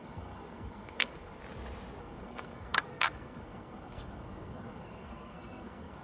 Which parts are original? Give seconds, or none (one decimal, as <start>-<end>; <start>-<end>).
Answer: 1.4-2.0